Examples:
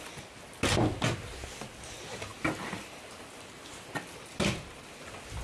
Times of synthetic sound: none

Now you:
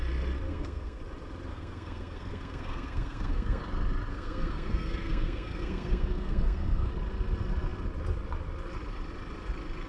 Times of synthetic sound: 0.5-1.0; 1.5-3.6; 4.1-6.9

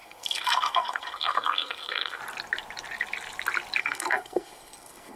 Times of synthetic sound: 0.0-2.2; 3.8-5.2